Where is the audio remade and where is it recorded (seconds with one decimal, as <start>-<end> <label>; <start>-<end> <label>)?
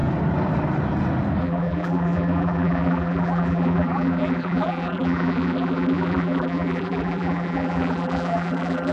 0.0-1.4 recorded; 1.4-8.9 remade